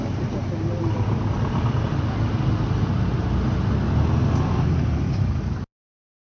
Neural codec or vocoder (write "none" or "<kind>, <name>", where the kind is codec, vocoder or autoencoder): none